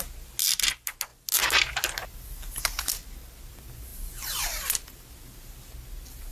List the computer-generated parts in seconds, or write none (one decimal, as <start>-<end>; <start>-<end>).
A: none